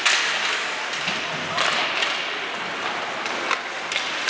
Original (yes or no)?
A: yes